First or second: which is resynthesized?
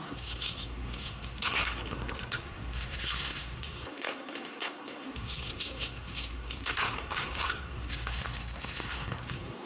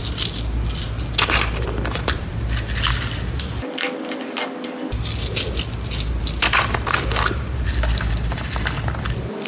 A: first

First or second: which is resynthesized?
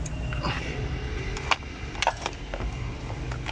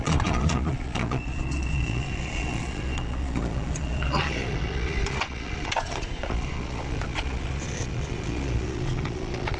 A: second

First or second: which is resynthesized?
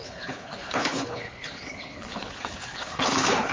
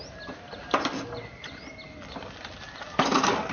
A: first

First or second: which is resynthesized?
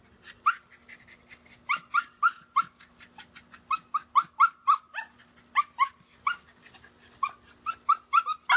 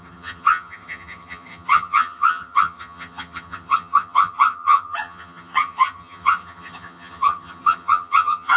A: second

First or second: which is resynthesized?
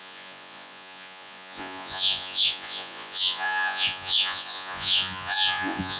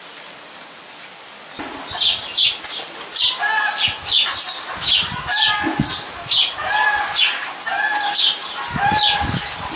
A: first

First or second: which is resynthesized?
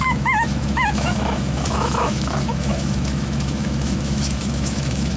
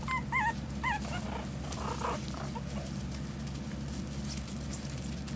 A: first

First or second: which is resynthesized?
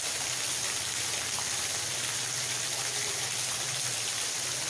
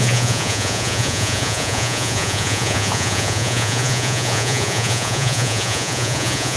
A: second